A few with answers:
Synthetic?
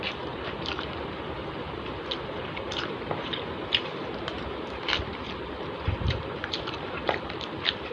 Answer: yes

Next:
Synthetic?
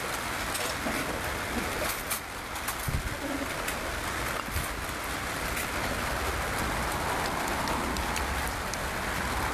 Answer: no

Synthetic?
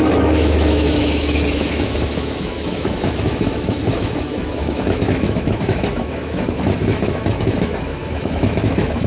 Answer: yes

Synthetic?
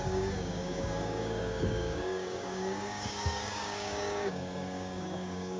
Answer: yes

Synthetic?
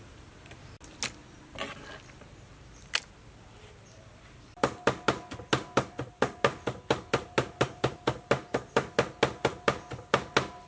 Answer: no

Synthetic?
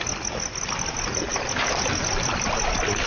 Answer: no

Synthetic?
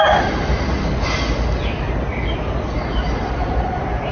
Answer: no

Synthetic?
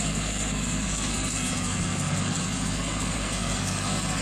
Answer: yes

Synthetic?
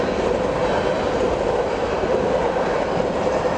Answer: no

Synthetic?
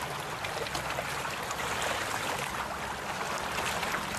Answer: no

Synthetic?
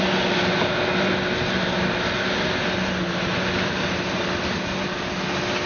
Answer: no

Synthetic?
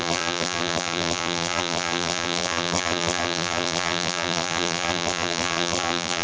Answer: yes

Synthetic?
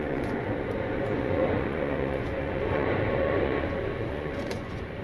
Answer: yes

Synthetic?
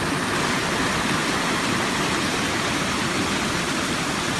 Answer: no